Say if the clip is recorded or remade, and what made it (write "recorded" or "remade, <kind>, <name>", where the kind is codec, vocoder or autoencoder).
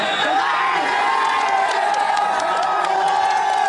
remade, vocoder, Vocos